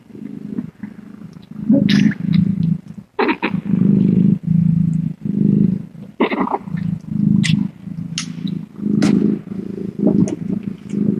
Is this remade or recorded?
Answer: recorded